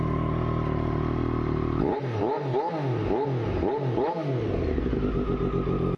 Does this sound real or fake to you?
real